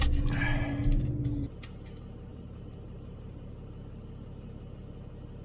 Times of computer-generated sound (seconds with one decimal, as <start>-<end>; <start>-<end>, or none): 2.3-3.5